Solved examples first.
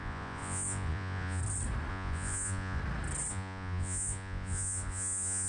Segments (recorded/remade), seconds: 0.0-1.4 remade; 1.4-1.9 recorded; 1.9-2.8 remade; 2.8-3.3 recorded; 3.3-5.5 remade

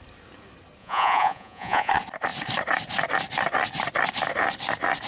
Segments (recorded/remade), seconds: 0.0-0.8 recorded; 0.8-1.9 remade; 1.9-5.1 recorded

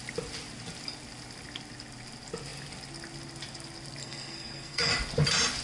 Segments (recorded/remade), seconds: 0.0-4.0 recorded; 4.0-4.9 remade; 4.9-5.6 recorded

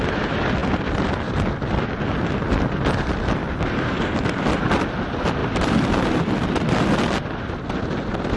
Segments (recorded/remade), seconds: 0.0-8.4 recorded